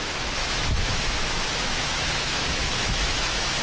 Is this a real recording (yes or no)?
no